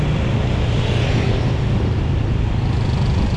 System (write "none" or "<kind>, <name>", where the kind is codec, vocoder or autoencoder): none